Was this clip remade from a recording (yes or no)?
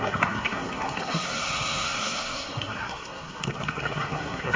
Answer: yes